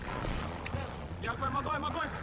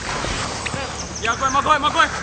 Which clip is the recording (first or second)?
second